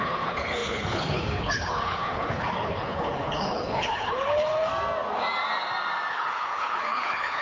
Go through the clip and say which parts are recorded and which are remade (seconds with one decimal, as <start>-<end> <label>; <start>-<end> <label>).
0.0-4.7 remade; 4.7-6.1 recorded; 6.1-7.4 remade